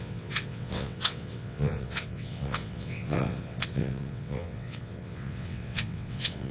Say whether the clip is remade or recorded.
remade